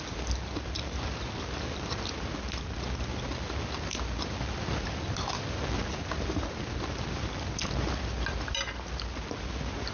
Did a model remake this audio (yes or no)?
no